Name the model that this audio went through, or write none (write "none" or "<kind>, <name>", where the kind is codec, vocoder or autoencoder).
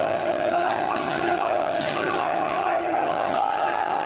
vocoder, HiFi-GAN